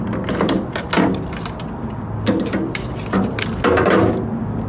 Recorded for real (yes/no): yes